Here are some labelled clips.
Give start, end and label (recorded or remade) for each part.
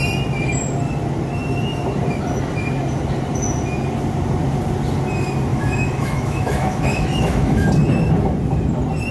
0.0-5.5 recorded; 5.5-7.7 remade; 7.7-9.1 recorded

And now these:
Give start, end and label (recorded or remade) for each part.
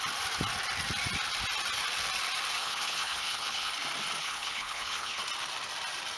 0.0-2.6 recorded; 2.6-3.7 remade; 3.7-4.2 recorded; 4.2-5.2 remade; 5.2-6.2 recorded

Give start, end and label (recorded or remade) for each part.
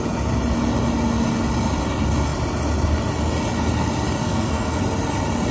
0.0-4.2 recorded; 4.2-4.8 remade; 4.8-5.5 recorded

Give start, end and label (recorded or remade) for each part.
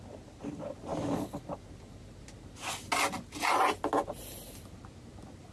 0.0-5.5 recorded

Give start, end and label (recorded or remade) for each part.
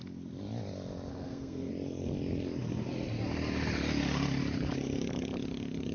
0.0-1.1 recorded; 1.1-1.7 remade; 1.7-5.9 recorded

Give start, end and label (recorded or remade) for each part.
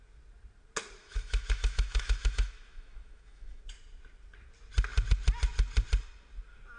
0.0-1.0 recorded; 1.0-3.6 remade; 3.6-6.8 recorded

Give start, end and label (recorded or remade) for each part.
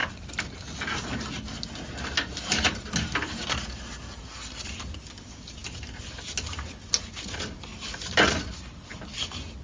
0.0-9.6 recorded